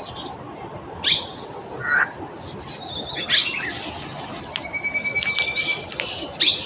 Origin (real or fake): real